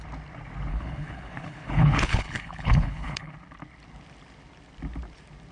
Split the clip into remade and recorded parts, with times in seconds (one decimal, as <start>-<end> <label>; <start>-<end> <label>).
0.0-0.7 recorded; 0.7-3.3 remade; 3.3-5.5 recorded